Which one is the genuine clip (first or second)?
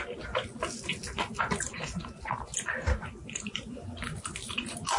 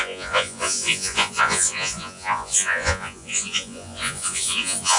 first